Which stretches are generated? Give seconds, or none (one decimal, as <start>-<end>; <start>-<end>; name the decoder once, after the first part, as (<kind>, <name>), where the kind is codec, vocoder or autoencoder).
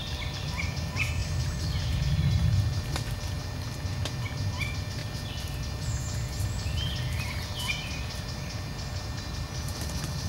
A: none